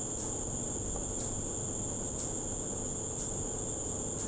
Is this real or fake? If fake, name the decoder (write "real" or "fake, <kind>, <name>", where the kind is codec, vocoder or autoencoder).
real